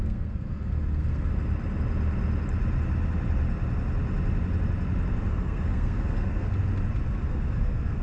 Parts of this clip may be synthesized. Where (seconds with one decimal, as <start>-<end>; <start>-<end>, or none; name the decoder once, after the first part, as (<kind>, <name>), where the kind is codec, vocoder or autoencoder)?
0.0-1.3 (codec, SNAC); 5.3-6.5; 7.3-8.0